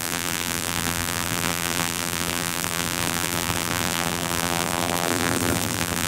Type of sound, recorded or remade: remade